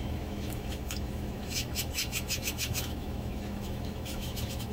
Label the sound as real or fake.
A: fake